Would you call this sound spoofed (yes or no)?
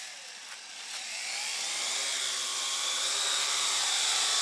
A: no